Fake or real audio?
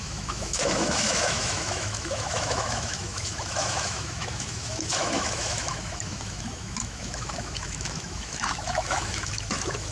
fake